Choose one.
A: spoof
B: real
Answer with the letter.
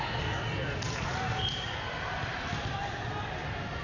B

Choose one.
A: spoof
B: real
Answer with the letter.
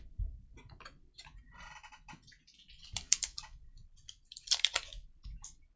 A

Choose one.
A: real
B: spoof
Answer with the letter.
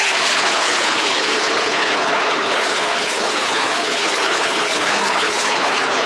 B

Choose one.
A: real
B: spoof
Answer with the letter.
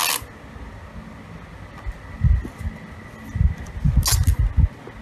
A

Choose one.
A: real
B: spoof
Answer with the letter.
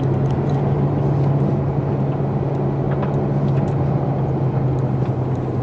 A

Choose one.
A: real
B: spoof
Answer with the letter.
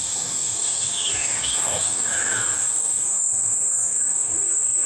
B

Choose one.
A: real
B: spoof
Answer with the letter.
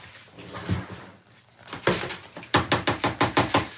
A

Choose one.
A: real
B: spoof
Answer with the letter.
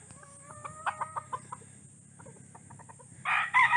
A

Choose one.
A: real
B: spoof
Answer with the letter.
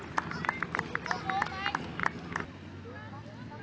A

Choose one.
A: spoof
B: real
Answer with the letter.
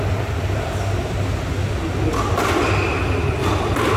B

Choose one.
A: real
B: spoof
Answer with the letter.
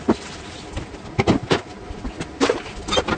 A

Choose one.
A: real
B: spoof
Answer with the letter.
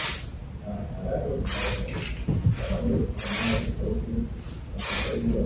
A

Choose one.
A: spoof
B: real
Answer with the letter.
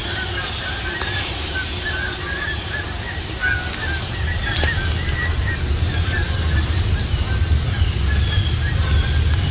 B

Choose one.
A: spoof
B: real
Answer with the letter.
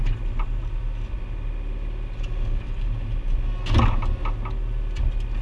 B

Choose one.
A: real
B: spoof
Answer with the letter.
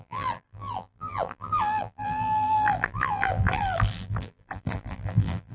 B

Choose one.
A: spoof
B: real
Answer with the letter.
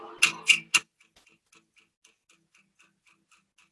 B